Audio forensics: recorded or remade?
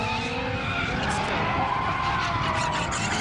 recorded